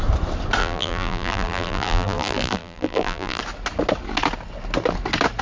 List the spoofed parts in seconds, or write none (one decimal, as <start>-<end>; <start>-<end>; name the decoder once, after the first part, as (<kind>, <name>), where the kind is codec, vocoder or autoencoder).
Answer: 0.6-3.4 (vocoder, BigVGAN v2)